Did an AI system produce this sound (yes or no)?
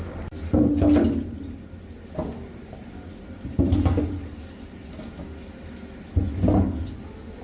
no